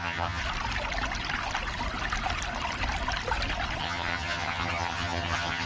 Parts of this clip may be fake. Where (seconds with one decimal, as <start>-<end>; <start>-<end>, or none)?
0.0-0.4; 3.8-5.7